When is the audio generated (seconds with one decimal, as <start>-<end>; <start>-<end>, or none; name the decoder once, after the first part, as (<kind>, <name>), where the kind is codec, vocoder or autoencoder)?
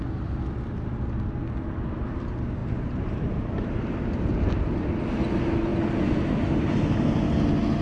2.6-3.6 (vocoder, BigVGAN v2)